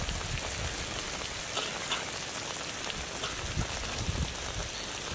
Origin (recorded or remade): recorded